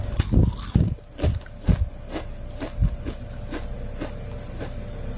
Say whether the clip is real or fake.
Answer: real